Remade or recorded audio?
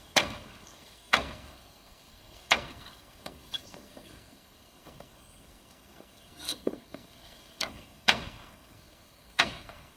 remade